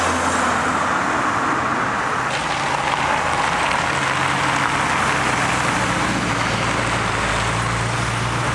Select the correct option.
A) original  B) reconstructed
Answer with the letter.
A